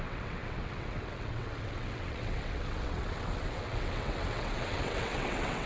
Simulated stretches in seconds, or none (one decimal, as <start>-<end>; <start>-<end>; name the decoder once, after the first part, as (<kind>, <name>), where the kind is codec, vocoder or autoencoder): 0.0-5.7 (vocoder, WaveNeXt)